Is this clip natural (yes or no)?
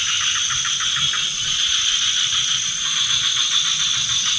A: yes